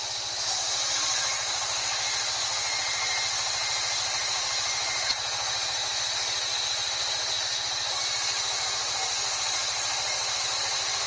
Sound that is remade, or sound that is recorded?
remade